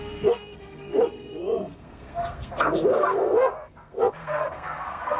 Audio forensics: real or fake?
fake